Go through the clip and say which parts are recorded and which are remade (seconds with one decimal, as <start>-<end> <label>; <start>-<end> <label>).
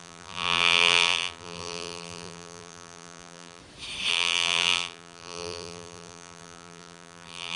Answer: 0.0-3.6 remade; 3.6-4.1 recorded; 4.1-7.6 remade